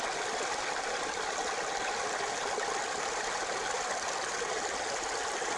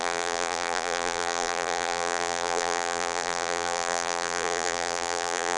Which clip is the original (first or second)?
first